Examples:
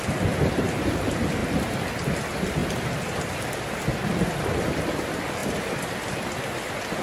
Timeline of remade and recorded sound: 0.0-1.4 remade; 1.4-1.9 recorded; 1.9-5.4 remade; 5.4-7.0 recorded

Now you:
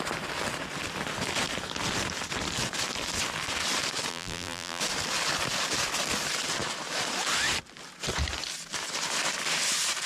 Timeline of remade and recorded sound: 0.0-4.1 recorded; 4.1-4.8 remade; 4.8-10.1 recorded

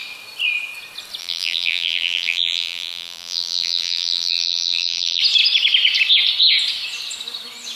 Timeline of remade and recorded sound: 0.0-1.2 recorded; 1.2-5.2 remade; 5.2-7.8 recorded

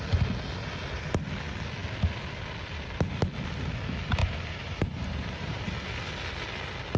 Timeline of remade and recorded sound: 0.0-4.2 recorded; 4.2-5.6 remade; 5.6-7.0 recorded

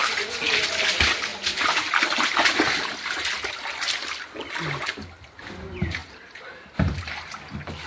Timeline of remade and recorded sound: 0.0-0.7 remade; 0.7-6.0 recorded; 6.0-6.6 remade; 6.6-7.9 recorded

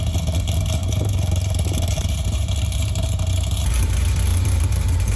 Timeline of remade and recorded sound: 0.0-0.8 recorded; 0.8-3.9 remade; 3.9-4.3 recorded; 4.3-5.2 remade

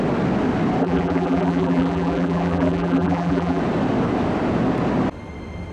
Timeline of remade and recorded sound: 0.0-0.8 recorded; 0.8-3.6 remade; 3.6-5.7 recorded